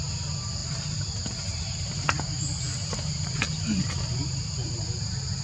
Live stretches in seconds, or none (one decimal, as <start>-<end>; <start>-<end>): 0.0-5.4